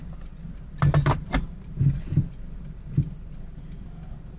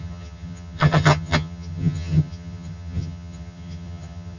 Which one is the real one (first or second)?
first